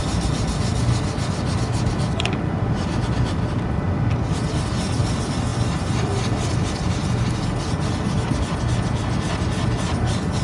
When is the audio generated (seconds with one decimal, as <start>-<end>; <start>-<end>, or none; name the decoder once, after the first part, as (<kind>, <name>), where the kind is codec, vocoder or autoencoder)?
none